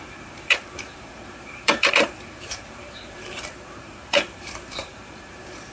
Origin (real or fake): fake